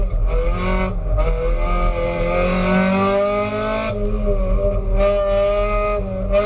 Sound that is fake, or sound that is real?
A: real